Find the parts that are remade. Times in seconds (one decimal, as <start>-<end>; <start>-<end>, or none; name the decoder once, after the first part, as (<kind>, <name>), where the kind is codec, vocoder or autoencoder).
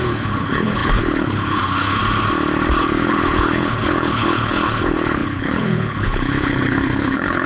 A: 0.0-2.0 (codec, HILCodec); 2.8-7.5